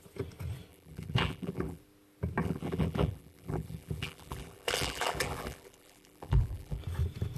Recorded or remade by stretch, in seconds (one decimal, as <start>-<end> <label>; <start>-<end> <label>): 0.0-0.7 recorded; 0.7-1.8 remade; 1.8-2.4 recorded; 2.4-6.8 remade; 6.8-7.4 recorded